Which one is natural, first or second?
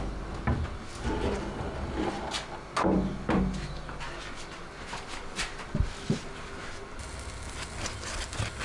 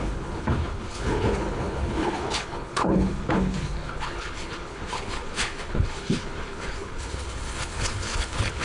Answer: first